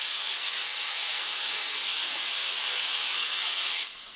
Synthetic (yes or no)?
yes